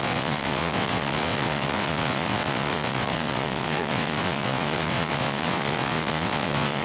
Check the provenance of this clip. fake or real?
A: fake